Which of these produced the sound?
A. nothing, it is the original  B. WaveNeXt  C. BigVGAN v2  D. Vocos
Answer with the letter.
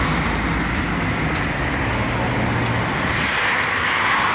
A